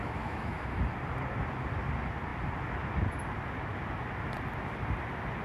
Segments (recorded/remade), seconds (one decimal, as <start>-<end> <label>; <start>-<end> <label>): 0.0-0.8 remade; 0.8-5.4 recorded